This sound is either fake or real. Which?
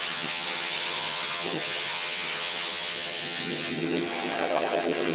fake